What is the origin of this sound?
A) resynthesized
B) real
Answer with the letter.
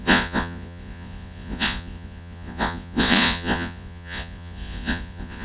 A